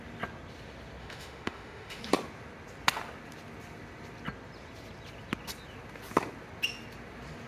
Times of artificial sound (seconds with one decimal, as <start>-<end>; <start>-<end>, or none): 1.0-2.0